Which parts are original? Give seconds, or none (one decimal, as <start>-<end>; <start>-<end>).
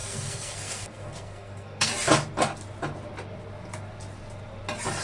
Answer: 1.9-5.0